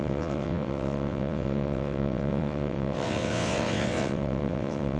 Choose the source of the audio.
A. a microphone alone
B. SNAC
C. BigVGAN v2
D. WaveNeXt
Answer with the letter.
D